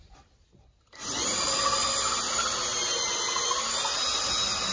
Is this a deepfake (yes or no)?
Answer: no